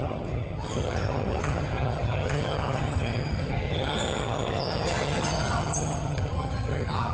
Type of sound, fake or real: fake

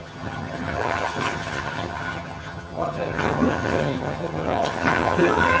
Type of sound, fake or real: fake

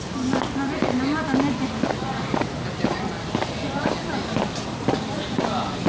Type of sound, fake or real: real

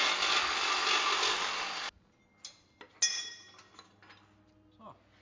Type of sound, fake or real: real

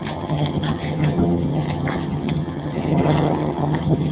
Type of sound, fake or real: fake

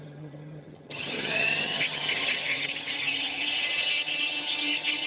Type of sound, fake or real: fake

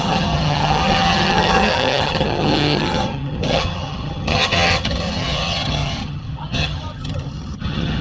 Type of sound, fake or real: fake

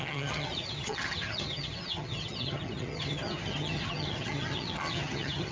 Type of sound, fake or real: fake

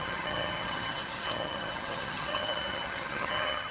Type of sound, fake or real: fake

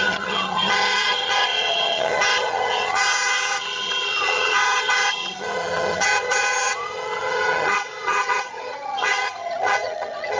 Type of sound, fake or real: fake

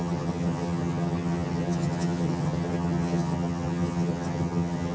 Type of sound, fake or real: fake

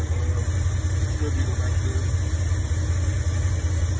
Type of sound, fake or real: real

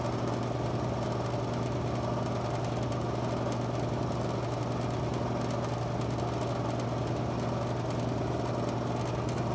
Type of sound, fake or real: real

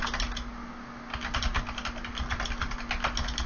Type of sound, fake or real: real